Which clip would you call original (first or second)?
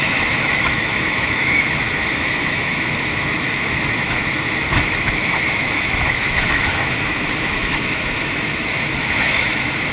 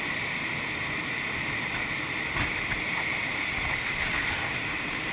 second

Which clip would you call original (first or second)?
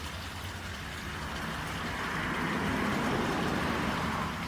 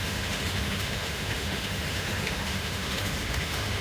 first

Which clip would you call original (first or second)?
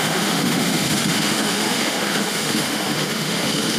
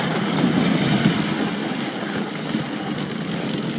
second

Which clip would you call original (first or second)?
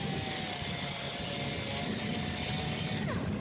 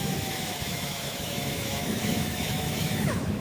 first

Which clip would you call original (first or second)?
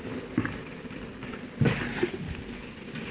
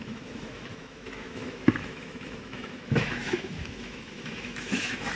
first